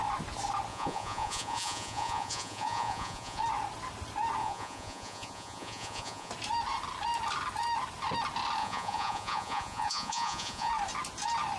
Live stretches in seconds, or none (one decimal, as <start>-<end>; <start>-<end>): 0.0-0.7; 3.4-4.4; 6.3-8.6; 10.7-11.6